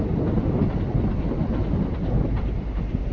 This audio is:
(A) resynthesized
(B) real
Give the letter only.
B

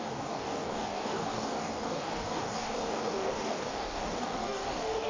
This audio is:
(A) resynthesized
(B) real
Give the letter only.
A